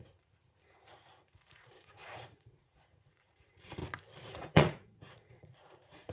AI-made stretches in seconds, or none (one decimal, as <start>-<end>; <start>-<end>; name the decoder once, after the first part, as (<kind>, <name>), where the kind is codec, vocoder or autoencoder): 0.0-3.8 (vocoder, Vocos); 4.3-6.1